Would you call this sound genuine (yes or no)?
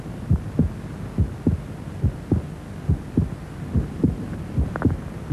yes